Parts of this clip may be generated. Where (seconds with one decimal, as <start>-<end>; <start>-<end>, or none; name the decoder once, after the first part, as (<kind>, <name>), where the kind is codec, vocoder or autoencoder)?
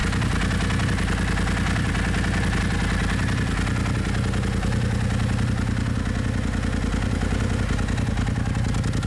none